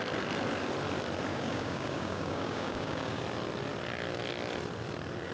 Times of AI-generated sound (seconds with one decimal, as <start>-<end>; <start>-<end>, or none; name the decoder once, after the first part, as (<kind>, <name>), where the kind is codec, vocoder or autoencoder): 1.3-3.2 (codec, DAC)